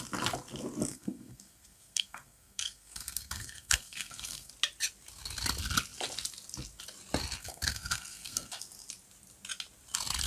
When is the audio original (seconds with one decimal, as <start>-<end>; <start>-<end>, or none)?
0.0-0.9; 4.5-7.4; 8.6-10.3